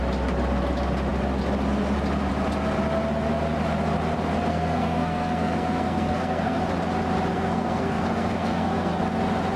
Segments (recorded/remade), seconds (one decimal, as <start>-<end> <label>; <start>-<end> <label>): 0.0-4.5 recorded; 4.5-6.6 remade; 6.6-7.3 recorded; 7.3-9.0 remade; 9.0-9.6 recorded

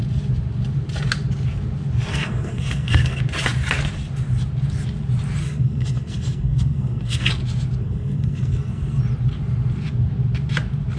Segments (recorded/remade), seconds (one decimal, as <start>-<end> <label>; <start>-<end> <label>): 0.0-2.1 recorded; 2.1-3.2 remade; 3.2-5.4 recorded; 5.4-7.3 remade; 7.3-7.8 recorded; 7.8-9.0 remade; 9.0-11.0 recorded

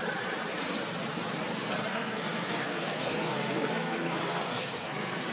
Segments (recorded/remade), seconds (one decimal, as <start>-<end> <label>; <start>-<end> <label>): 0.0-1.9 recorded; 1.9-5.3 remade

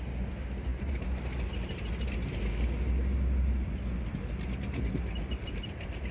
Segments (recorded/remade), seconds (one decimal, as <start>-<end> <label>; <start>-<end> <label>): 0.0-6.1 recorded

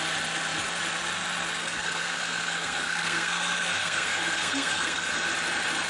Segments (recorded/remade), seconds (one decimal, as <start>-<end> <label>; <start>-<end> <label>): 0.0-1.6 recorded; 1.6-5.1 remade; 5.1-5.9 recorded

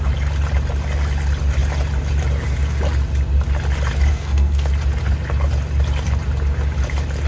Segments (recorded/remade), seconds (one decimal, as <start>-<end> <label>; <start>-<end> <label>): 0.0-4.1 recorded; 4.1-4.7 remade; 4.7-7.3 recorded